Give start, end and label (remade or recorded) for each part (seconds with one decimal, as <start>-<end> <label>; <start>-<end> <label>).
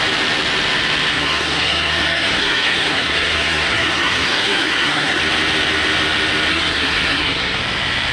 0.0-1.1 recorded; 1.1-5.2 remade; 5.2-6.5 recorded; 6.5-7.6 remade; 7.6-8.1 recorded